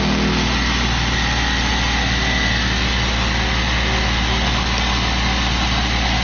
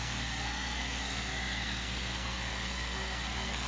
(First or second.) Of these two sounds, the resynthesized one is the second